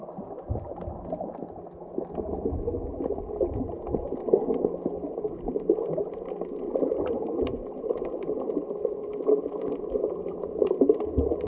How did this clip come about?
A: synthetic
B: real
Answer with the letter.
B